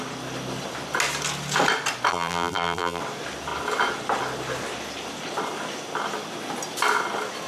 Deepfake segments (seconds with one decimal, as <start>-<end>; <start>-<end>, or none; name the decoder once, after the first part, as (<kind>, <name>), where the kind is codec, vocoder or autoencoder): 2.1-3.0 (vocoder, BigVGAN v2)